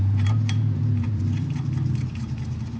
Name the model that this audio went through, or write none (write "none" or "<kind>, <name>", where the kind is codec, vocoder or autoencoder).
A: vocoder, BigVGAN v2